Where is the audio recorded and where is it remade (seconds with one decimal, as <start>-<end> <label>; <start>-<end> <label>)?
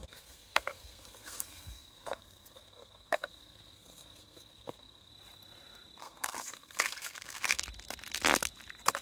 0.0-5.1 remade; 5.1-6.0 recorded; 6.0-7.6 remade; 7.6-9.0 recorded